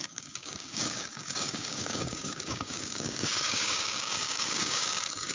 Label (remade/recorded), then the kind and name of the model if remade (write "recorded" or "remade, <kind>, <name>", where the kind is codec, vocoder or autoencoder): remade, codec, DAC